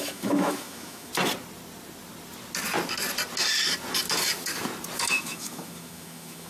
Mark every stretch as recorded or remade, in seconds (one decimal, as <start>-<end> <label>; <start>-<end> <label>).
0.0-1.1 remade; 1.1-5.0 recorded; 5.0-6.5 remade